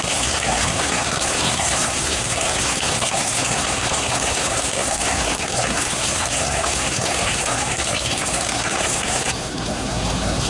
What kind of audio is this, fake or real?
fake